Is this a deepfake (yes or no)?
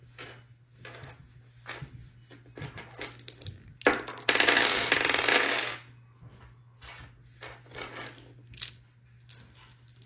no